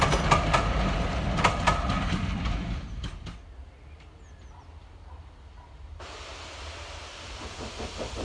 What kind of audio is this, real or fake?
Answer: real